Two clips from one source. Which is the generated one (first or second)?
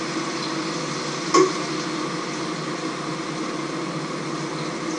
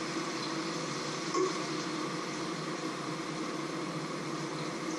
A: second